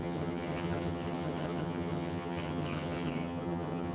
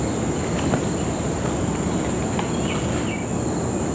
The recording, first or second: second